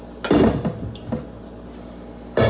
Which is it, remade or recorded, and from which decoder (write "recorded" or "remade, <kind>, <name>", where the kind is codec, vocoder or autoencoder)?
recorded